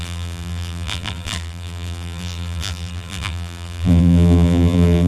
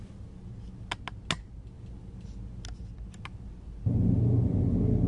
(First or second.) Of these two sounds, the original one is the second